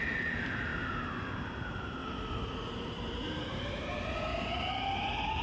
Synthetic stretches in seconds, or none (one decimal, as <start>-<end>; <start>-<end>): 0.0-2.0; 2.7-4.3